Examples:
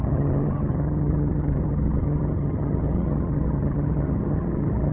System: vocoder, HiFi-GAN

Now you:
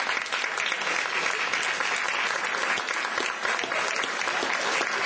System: none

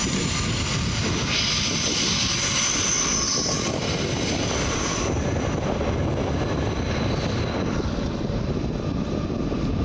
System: none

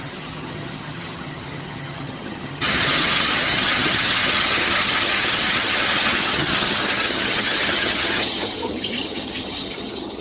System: vocoder, HiFi-GAN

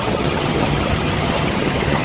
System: vocoder, HiFi-GAN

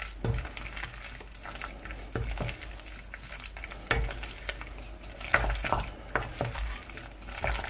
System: none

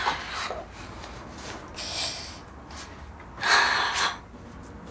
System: none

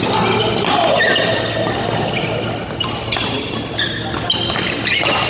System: none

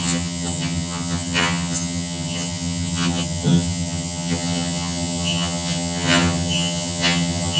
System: vocoder, HiFi-GAN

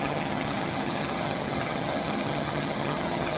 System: vocoder, HiFi-GAN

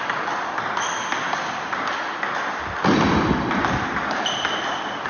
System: none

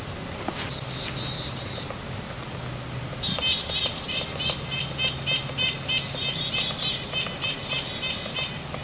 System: none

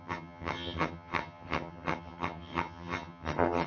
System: vocoder, HiFi-GAN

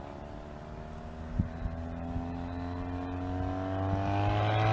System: none